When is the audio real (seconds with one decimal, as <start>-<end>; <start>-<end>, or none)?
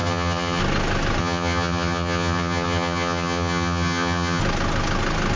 0.6-1.2; 4.4-5.4